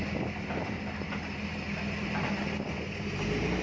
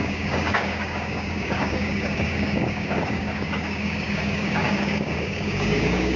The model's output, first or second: second